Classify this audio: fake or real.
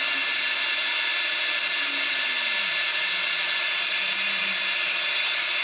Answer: real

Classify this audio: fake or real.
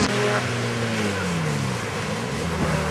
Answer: real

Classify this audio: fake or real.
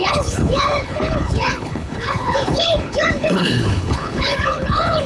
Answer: fake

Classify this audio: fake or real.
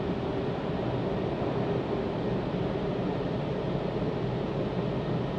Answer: real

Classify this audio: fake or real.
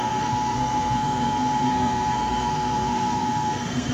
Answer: fake